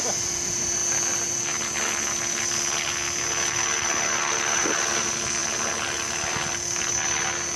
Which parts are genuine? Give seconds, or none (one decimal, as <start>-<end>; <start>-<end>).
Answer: 0.0-7.6